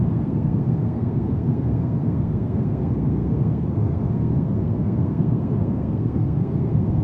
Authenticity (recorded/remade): remade